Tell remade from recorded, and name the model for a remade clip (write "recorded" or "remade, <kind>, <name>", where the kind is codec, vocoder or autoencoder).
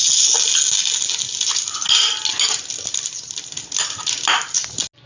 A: recorded